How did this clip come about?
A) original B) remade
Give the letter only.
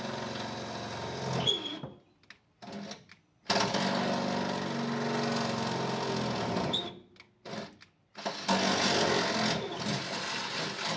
A